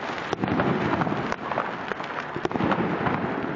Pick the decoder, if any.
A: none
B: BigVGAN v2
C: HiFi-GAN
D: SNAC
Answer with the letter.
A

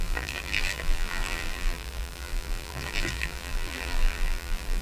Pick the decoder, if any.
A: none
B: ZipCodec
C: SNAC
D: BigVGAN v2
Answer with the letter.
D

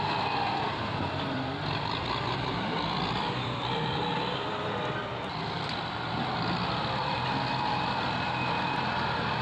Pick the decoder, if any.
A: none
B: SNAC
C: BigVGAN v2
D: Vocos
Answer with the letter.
C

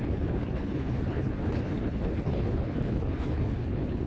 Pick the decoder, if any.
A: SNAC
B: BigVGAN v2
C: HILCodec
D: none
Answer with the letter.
C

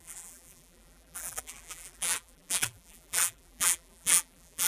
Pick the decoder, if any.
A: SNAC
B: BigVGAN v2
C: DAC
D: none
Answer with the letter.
B